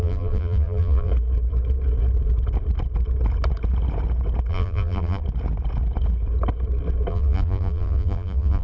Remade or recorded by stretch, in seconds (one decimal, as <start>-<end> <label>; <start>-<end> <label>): 0.0-1.1 remade; 1.1-4.5 recorded; 4.5-5.2 remade; 5.2-7.1 recorded; 7.1-8.6 remade